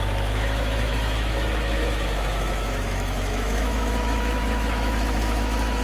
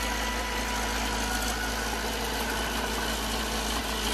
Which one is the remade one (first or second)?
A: first